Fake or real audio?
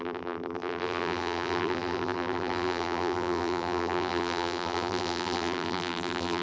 fake